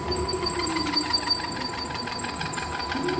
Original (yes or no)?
no